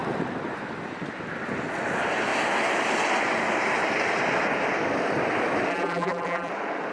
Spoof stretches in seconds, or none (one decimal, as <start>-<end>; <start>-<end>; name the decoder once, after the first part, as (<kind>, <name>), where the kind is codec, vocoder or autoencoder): 5.7-6.5 (vocoder, BigVGAN v2)